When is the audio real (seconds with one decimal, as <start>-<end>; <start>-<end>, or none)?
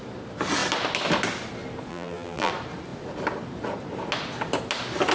0.0-1.9; 2.5-5.1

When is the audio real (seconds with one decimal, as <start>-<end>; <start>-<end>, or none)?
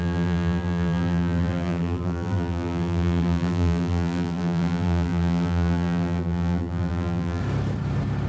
7.4-8.3